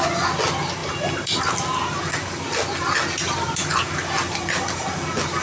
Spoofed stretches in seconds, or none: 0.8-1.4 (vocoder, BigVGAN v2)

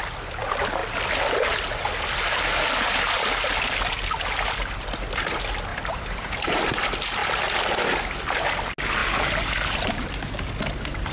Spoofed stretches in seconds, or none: 5.7-6.7 (vocoder, BigVGAN v2)

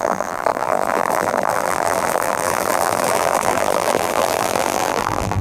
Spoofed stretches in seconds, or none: 0.0-5.4 (vocoder, BigVGAN v2)

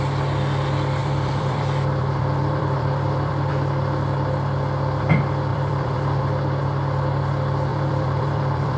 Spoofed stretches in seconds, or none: 1.0-3.5 (vocoder, BigVGAN v2); 5.5-6.2; 7.7-8.8

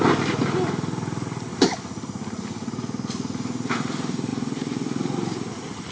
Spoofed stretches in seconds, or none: 0.4-3.9 (vocoder, BigVGAN v2); 4.3-5.9